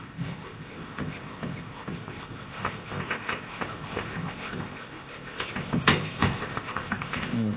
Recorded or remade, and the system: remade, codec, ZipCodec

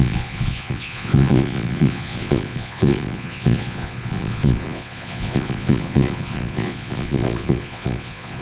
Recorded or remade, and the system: remade, vocoder, Vocos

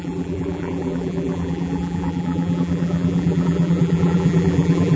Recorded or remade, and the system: remade, vocoder, BigVGAN v2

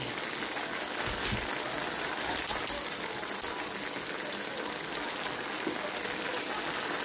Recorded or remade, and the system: recorded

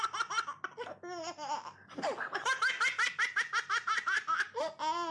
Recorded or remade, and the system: recorded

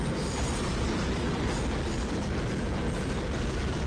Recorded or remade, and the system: recorded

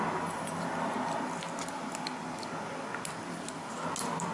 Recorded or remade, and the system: recorded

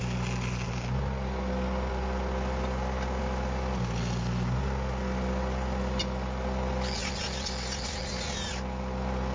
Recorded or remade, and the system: recorded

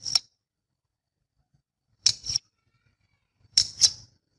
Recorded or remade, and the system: remade, vocoder, BigVGAN v2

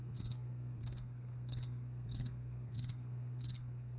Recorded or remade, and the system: remade, codec, SNAC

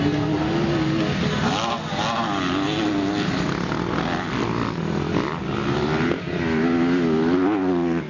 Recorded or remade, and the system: recorded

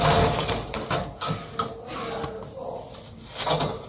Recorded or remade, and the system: recorded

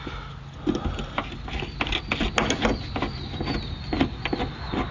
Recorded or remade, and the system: recorded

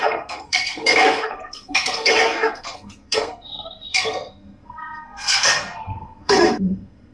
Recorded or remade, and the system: remade, codec, SNAC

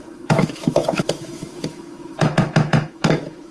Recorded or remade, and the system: remade, autoencoder, DAC-VAE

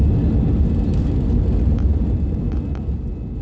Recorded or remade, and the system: recorded